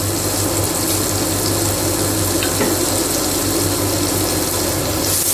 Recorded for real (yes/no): yes